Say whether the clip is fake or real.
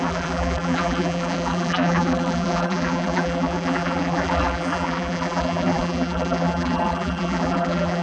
fake